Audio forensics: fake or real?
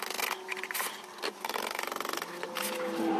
real